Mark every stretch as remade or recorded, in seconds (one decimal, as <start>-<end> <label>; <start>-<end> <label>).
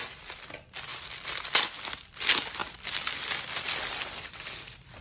0.0-5.0 remade